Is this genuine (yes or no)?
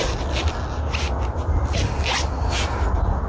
yes